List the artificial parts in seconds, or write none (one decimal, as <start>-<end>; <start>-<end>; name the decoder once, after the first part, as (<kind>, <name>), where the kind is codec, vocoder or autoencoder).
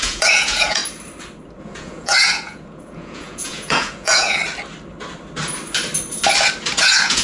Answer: 0.0-0.8 (vocoder, Vocos); 1.6-4.4; 6.7-7.2